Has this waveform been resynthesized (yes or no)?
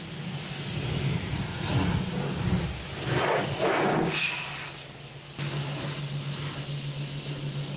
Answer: no